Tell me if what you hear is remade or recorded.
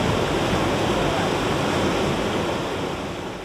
recorded